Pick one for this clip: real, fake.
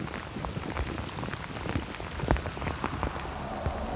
real